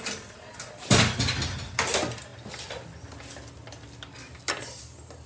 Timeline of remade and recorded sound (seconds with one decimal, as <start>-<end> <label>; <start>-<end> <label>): 0.0-5.3 recorded